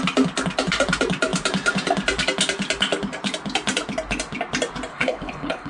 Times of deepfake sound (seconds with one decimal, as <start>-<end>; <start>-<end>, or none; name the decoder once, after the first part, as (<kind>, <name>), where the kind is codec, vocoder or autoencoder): 4.9-5.7 (codec, HILCodec)